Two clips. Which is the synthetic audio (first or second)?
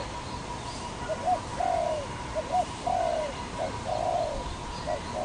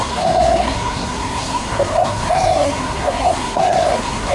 second